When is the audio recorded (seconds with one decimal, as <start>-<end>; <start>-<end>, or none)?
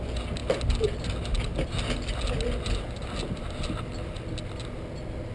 0.0-5.3